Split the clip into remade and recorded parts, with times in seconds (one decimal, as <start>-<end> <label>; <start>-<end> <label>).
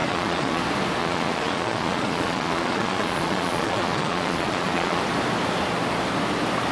0.0-0.6 remade; 0.6-1.0 recorded; 1.0-5.0 remade; 5.0-6.7 recorded